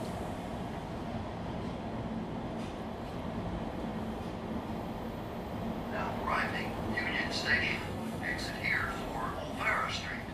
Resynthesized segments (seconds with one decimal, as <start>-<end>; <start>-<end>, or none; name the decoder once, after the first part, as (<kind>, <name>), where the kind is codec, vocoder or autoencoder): 7.7-8.5 (codec, SNAC)